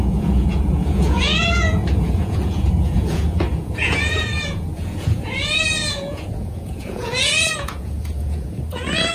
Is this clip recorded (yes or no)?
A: no